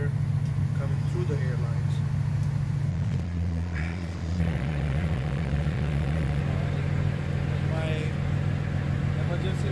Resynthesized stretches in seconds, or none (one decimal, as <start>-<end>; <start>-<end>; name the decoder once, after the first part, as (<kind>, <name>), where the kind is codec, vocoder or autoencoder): 2.9-6.4 (vocoder, Vocos)